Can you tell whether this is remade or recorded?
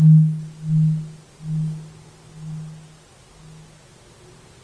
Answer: recorded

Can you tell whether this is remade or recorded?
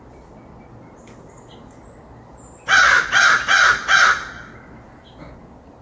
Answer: recorded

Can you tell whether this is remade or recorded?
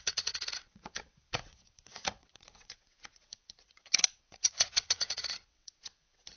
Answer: remade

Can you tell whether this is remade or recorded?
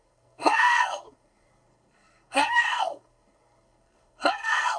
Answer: remade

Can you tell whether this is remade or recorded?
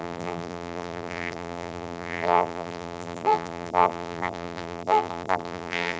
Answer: remade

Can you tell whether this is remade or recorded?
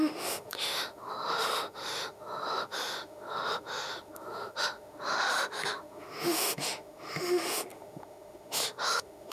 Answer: remade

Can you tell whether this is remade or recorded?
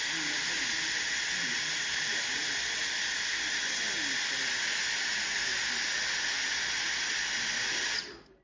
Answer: recorded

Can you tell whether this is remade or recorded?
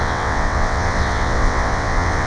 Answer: remade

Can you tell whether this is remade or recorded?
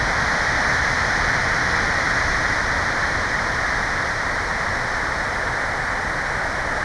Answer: recorded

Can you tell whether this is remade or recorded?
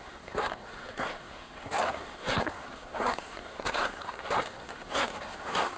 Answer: remade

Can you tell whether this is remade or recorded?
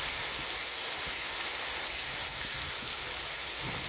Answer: recorded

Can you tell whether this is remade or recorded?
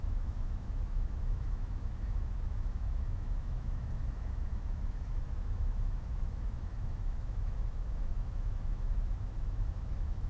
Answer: remade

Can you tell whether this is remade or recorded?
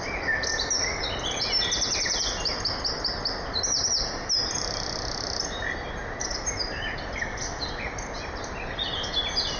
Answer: recorded